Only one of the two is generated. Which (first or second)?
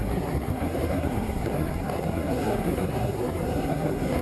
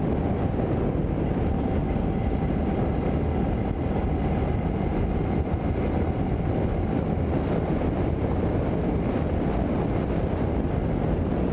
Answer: first